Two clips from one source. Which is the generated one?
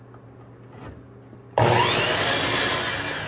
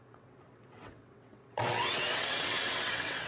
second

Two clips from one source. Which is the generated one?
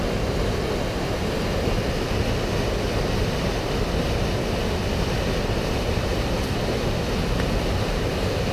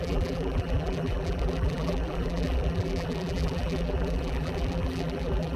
second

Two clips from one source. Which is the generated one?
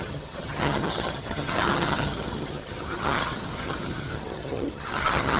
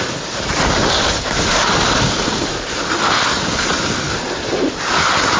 first